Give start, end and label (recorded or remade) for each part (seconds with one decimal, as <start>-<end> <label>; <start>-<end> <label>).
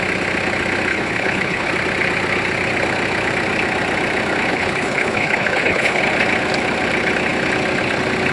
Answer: 0.0-0.9 recorded; 0.9-1.7 remade; 1.7-4.5 recorded; 4.5-6.0 remade; 6.0-8.3 recorded